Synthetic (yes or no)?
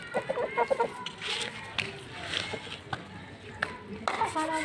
no